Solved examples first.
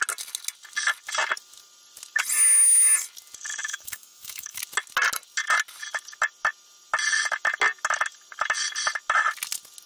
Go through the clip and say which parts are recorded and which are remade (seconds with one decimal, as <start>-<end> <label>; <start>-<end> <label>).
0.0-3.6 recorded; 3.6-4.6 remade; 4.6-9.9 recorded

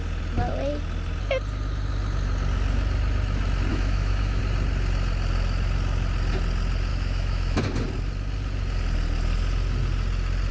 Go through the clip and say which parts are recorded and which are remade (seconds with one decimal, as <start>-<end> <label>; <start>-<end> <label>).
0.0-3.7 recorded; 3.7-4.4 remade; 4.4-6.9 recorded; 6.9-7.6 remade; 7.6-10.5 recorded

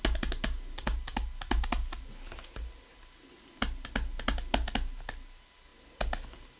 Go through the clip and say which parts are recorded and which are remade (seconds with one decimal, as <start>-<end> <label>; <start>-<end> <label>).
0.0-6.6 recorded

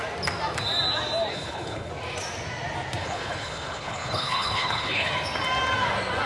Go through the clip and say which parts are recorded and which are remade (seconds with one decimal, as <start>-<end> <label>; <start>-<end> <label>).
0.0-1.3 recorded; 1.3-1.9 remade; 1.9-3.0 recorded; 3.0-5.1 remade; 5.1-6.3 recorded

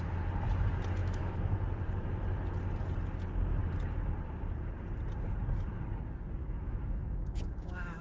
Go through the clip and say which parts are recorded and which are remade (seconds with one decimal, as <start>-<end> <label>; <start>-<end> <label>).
0.0-1.0 recorded; 1.0-1.6 remade; 1.6-6.4 recorded; 6.4-8.0 remade

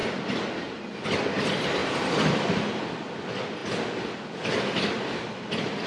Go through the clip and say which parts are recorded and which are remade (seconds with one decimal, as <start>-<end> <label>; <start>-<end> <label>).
0.0-1.8 recorded; 1.8-2.4 remade; 2.4-5.9 recorded

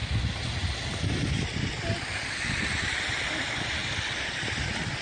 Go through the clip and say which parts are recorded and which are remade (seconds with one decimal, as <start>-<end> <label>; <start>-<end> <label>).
0.0-5.0 recorded

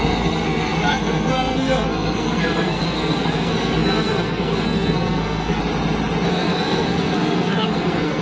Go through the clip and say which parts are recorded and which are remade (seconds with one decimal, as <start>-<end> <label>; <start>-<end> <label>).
0.0-5.6 remade; 5.6-6.3 recorded; 6.3-8.2 remade